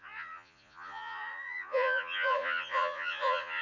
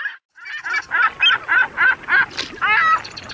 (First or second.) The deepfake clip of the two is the first